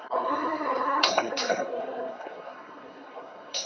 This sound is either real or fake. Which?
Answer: fake